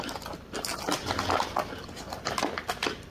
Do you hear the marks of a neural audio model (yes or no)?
no